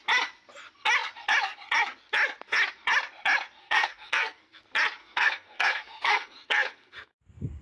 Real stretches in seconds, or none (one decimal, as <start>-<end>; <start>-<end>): 0.0-3.6; 4.6-5.0